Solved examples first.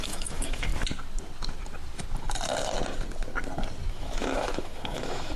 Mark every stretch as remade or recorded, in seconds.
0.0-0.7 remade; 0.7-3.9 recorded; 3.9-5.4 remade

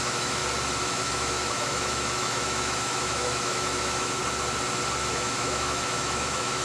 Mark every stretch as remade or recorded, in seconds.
0.0-0.4 remade; 0.4-0.9 recorded; 0.9-4.2 remade; 4.2-5.1 recorded; 5.1-6.6 remade

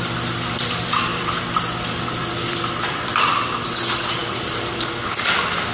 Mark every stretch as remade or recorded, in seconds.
0.0-1.1 recorded; 1.1-3.4 remade; 3.4-4.2 recorded; 4.2-4.9 remade; 4.9-5.7 recorded

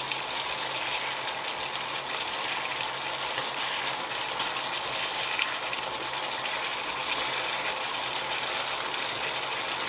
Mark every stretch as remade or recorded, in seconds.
0.0-9.9 recorded